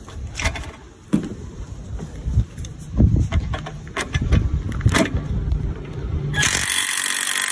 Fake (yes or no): yes